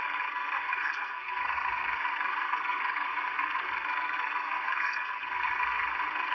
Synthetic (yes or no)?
yes